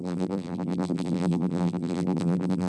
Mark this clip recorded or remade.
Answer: remade